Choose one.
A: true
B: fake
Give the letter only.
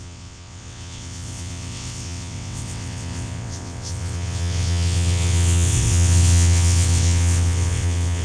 B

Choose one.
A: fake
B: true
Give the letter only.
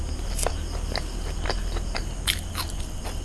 B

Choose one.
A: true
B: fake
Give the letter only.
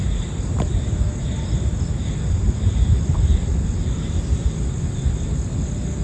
A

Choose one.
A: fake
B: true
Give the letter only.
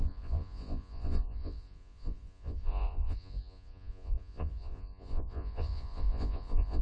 A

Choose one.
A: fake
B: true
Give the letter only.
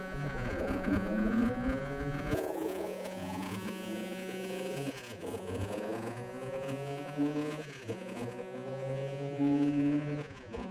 A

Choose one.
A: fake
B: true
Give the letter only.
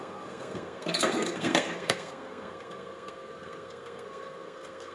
A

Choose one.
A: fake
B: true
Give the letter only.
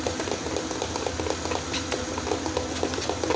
B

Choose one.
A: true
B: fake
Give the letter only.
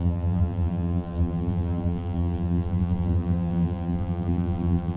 B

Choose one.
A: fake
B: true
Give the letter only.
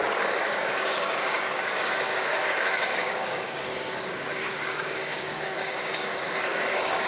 A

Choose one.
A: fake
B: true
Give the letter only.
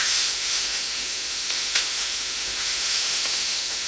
A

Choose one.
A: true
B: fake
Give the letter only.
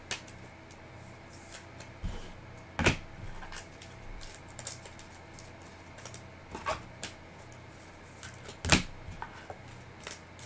A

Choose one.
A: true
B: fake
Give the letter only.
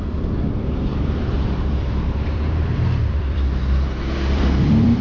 B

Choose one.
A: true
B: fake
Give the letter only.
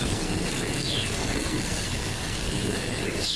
B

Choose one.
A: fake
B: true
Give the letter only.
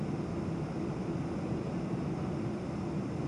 A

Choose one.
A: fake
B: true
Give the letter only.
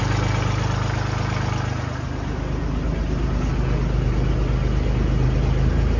B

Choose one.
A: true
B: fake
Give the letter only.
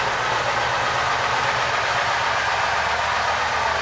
A